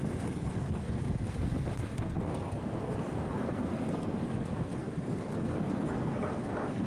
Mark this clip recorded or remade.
remade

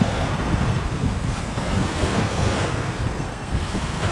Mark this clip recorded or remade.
remade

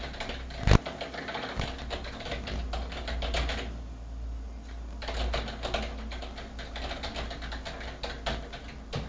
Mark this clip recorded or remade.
recorded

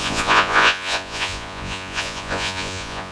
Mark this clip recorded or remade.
remade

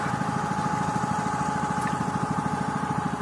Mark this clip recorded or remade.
recorded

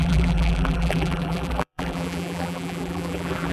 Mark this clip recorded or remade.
remade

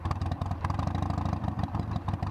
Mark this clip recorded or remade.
recorded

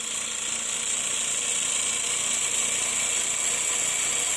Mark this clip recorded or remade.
recorded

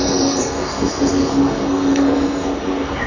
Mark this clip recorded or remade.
remade